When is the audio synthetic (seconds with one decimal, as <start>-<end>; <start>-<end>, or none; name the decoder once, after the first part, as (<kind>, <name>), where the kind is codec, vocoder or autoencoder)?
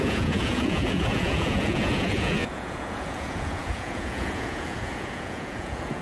0.0-6.0 (vocoder, Vocos)